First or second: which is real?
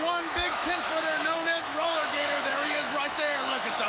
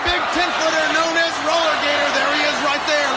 second